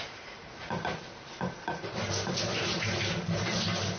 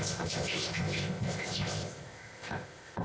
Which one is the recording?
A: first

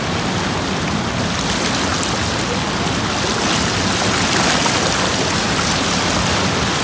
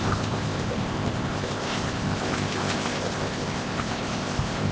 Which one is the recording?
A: first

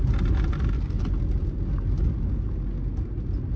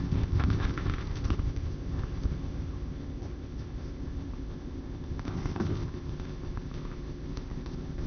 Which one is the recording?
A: first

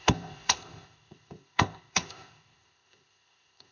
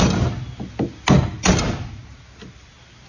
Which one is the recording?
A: second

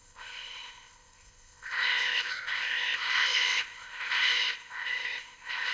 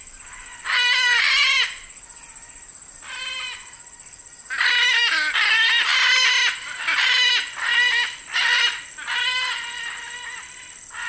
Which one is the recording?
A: second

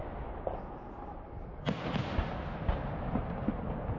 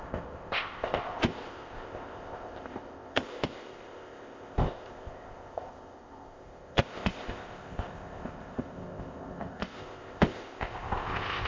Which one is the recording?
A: first